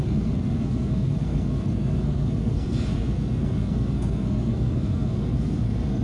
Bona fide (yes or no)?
no